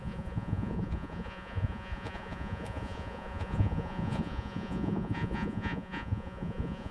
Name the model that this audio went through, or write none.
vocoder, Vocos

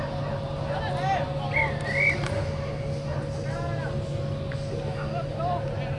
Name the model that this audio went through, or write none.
none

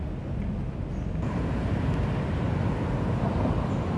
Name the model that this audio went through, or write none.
none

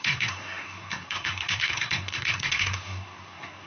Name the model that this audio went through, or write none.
codec, SNAC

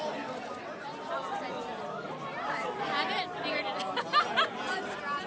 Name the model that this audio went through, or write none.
none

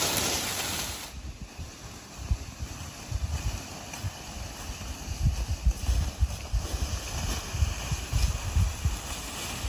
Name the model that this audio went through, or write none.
none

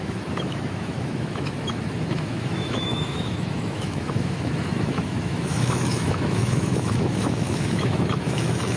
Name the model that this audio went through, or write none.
autoencoder, DAC-VAE